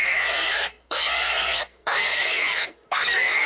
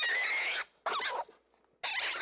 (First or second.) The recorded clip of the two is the second